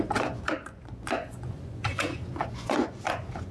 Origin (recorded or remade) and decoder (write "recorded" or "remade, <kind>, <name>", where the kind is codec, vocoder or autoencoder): remade, vocoder, Vocos